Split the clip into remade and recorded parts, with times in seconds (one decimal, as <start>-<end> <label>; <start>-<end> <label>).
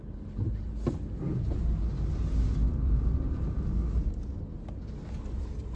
0.0-2.6 recorded; 2.6-4.2 remade; 4.2-5.8 recorded